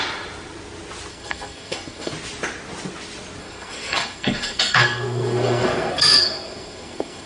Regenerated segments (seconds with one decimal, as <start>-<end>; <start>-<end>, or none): 1.1-2.1; 3.4-7.3